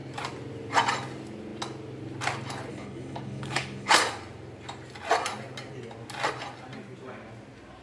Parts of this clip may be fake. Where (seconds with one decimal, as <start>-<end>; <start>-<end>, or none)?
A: 2.7-4.0